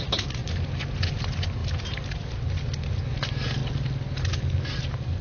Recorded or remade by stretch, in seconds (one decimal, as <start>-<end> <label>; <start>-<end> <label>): 0.0-5.2 recorded